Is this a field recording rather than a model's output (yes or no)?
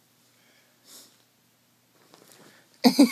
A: yes